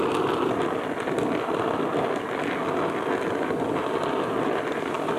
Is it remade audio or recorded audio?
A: recorded